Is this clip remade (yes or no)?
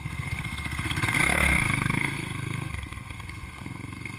yes